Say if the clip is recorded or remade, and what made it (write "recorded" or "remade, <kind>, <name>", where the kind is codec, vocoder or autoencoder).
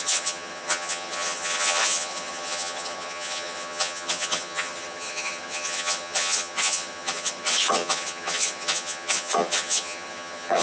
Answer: remade, vocoder, HiFi-GAN